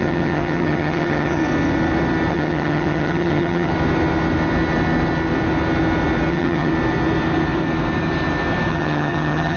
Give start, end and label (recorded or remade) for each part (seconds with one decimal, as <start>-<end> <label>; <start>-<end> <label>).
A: 0.0-1.4 remade; 1.4-2.3 recorded; 2.3-3.7 remade; 3.7-6.3 recorded; 6.3-6.7 remade; 6.7-8.7 recorded; 8.7-9.6 remade